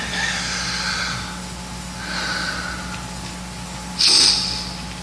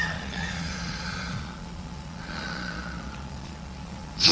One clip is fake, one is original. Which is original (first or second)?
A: first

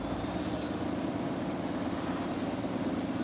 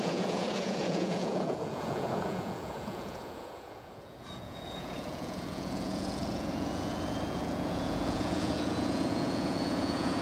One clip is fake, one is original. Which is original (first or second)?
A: first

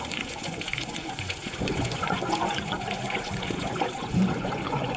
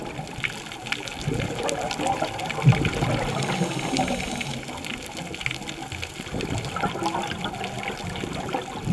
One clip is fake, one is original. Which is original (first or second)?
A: second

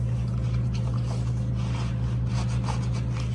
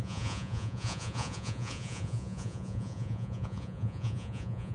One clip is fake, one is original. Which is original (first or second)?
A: first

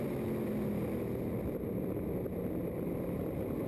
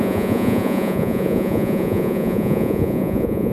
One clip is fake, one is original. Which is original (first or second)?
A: first